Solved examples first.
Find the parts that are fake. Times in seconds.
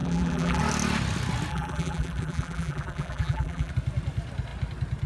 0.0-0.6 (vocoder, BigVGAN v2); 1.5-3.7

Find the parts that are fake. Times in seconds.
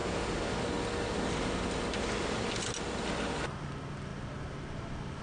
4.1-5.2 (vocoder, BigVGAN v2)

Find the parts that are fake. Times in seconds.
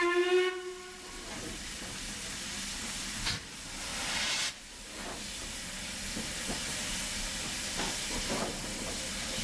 none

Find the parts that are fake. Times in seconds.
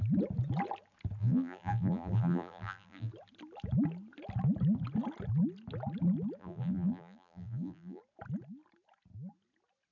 1.2-3.1 (vocoder, BigVGAN v2); 6.4-8.0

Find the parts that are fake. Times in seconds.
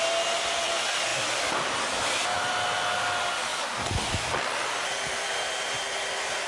1.1-2.5 (vocoder, BigVGAN v2); 3.5-5.4